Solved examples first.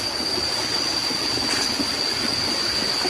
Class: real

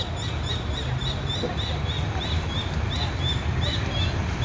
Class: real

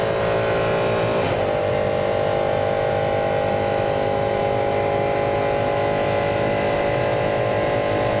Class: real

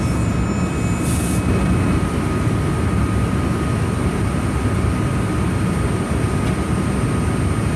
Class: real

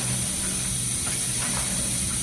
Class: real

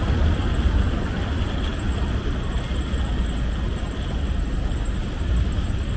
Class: real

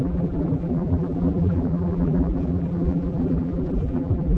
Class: fake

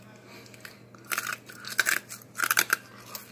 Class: real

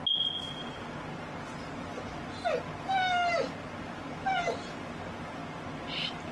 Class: real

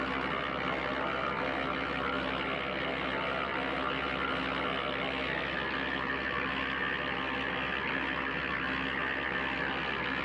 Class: real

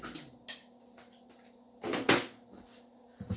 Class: real